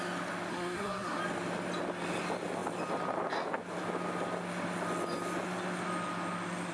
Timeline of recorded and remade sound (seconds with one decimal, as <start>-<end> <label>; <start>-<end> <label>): 0.0-0.5 recorded; 0.5-1.2 remade; 1.2-6.7 recorded